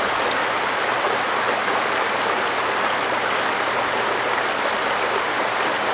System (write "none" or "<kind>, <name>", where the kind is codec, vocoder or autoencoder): none